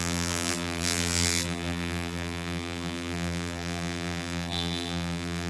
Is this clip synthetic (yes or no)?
yes